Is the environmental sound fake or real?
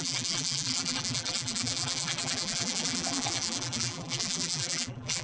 fake